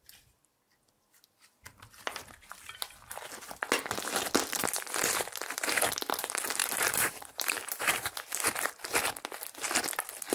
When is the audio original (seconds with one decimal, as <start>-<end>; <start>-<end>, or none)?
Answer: 0.0-6.6; 8.7-10.3